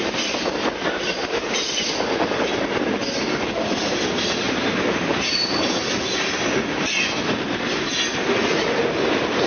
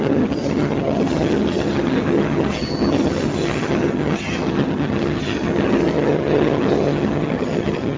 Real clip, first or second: first